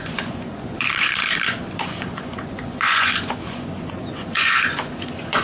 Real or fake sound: fake